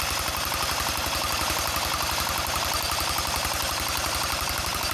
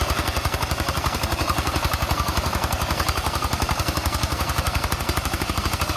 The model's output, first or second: second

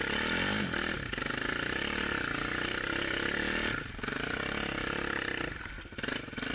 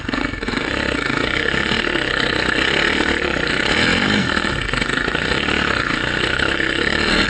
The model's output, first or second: second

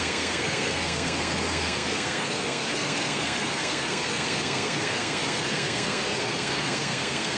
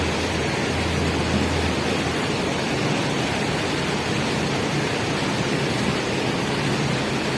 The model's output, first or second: first